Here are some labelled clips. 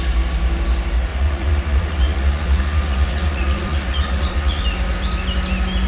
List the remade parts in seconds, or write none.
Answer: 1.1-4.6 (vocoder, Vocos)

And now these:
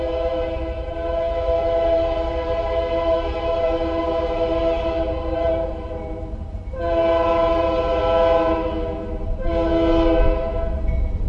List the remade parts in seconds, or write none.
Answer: 0.0-8.0 (vocoder, BigVGAN v2); 10.4-11.3

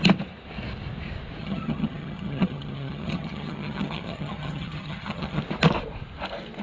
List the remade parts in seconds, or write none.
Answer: 1.4-5.4 (vocoder, HiFi-GAN)

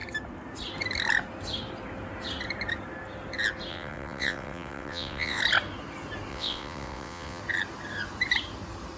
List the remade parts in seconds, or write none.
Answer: 3.7-5.4 (vocoder, WaveNeXt); 6.3-7.4

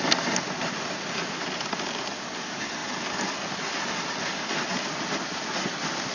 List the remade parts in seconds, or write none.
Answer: none